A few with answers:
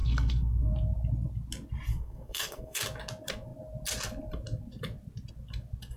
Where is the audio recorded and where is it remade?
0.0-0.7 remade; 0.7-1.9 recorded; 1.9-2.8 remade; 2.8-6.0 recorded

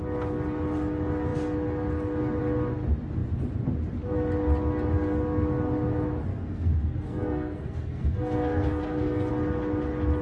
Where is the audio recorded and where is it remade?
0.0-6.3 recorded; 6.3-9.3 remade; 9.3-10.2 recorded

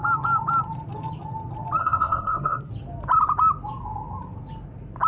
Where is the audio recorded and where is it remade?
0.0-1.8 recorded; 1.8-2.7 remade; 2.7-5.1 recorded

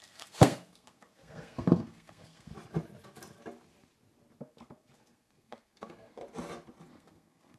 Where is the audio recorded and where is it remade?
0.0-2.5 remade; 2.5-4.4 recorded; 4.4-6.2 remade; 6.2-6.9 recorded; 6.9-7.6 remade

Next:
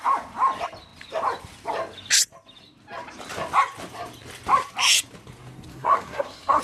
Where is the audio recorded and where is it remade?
0.0-5.7 recorded; 5.7-6.6 remade

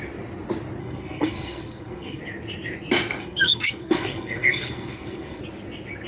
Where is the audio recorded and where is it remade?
0.0-0.8 recorded; 0.8-2.2 remade; 2.2-3.2 recorded; 3.2-5.4 remade; 5.4-6.1 recorded

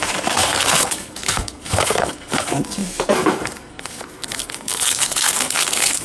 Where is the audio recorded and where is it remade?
0.0-6.0 remade